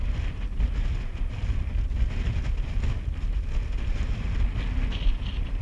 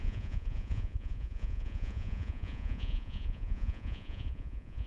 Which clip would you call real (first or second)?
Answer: first